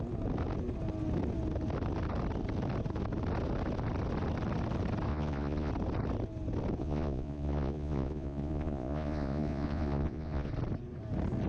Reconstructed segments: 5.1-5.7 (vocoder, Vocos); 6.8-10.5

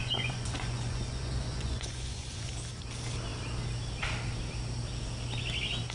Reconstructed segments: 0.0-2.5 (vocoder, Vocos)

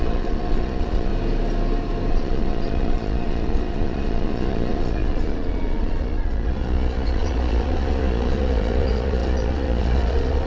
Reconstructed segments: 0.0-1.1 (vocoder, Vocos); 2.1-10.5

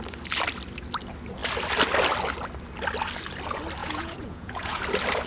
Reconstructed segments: 3.8-4.8 (vocoder, Vocos)

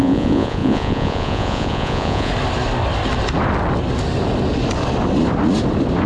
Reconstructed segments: 0.0-2.3 (vocoder, Vocos)